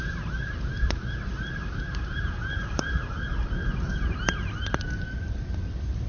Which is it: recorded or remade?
recorded